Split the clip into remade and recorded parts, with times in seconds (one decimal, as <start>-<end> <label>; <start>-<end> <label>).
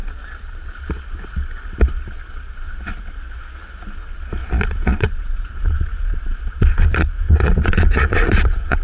0.0-4.4 recorded; 4.4-8.8 remade